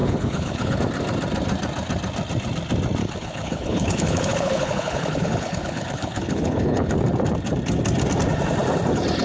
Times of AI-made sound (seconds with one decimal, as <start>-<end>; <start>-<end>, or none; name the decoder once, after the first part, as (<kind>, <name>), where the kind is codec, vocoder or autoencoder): 0.0-0.8 (codec, HILCodec); 3.0-6.9